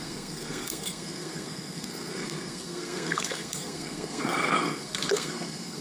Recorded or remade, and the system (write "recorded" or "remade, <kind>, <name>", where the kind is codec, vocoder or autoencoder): remade, codec, SNAC